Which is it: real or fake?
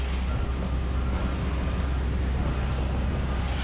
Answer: real